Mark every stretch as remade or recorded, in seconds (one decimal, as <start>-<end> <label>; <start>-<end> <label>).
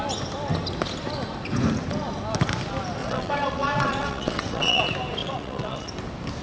0.0-3.0 recorded; 3.0-4.8 remade; 4.8-5.2 recorded; 5.2-5.9 remade; 5.9-6.4 recorded